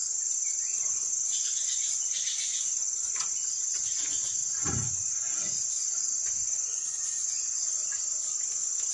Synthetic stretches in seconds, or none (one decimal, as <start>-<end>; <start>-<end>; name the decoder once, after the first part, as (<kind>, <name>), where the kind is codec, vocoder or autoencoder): 0.0-8.0 (vocoder, Vocos)